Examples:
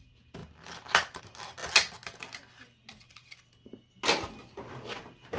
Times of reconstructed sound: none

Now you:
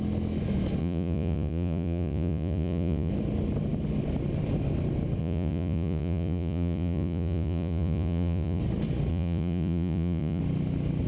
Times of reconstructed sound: 0.8-3.1 (vocoder, Vocos); 5.2-8.6; 9.1-10.4